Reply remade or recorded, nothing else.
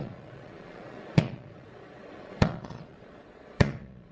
remade